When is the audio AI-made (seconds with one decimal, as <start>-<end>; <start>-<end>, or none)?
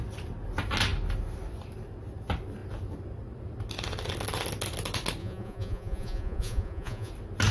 5.2-7.1